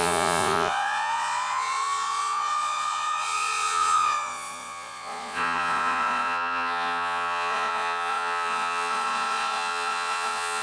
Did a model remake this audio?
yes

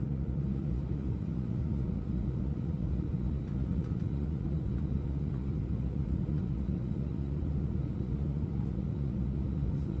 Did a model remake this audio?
yes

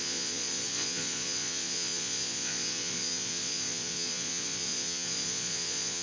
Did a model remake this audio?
yes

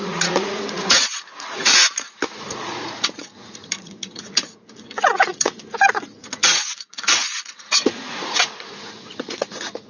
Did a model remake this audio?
yes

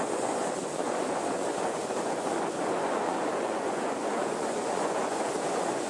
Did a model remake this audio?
yes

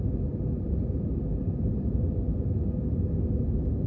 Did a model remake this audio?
no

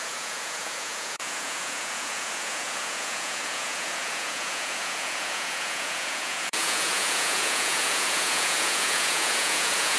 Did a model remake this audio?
yes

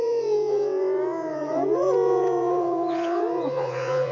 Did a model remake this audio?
yes